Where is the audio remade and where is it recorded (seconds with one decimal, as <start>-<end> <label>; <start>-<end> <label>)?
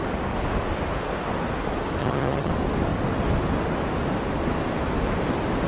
0.0-2.0 recorded; 2.0-2.5 remade; 2.5-5.7 recorded